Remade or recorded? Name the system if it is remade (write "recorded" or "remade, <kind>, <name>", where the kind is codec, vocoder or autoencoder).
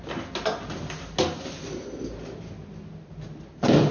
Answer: recorded